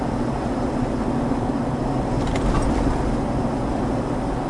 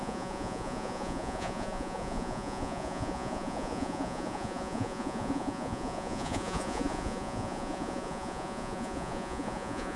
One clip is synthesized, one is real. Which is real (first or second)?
first